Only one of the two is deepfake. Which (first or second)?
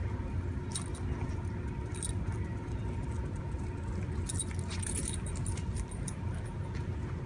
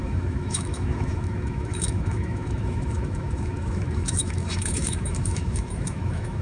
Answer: second